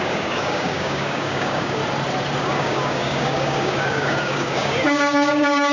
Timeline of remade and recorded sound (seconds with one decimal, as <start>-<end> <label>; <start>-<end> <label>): 0.0-1.8 remade; 1.8-2.4 recorded; 2.4-5.7 remade